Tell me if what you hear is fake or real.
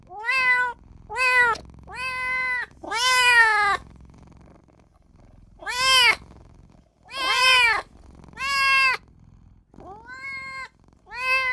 real